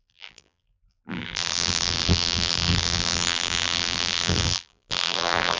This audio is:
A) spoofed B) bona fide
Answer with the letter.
A